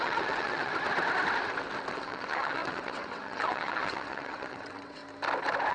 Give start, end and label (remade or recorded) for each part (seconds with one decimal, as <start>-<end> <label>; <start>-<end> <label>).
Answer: 0.0-0.7 remade; 0.7-1.9 recorded; 1.9-5.0 remade; 5.0-5.7 recorded